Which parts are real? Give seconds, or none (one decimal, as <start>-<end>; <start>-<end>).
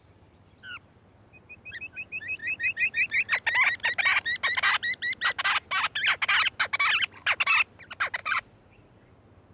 0.0-8.2; 9.1-9.5